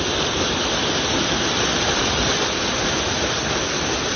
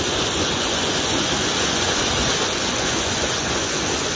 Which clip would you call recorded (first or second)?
first